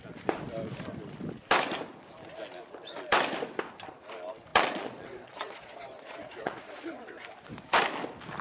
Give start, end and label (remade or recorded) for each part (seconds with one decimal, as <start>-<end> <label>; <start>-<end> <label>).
0.0-4.5 recorded; 4.5-7.2 remade; 7.2-8.4 recorded